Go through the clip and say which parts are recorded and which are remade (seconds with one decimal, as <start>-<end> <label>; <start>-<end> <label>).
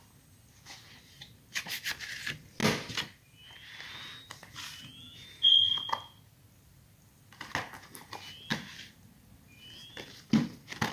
0.0-10.9 recorded